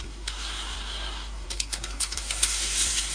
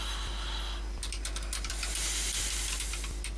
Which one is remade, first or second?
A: first